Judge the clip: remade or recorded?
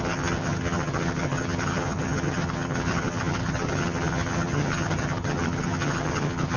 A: remade